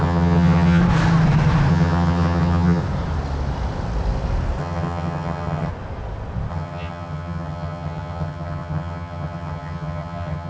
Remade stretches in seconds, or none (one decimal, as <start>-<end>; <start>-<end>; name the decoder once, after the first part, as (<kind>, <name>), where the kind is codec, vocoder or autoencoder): 0.0-0.8 (vocoder, HiFi-GAN); 1.7-2.8; 4.6-5.7; 6.5-10.5